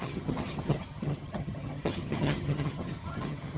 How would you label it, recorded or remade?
remade